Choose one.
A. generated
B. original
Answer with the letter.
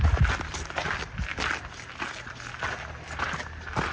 B